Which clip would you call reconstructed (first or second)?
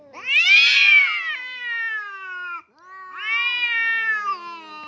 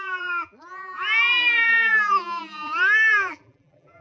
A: second